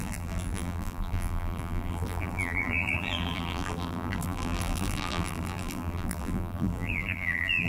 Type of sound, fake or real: fake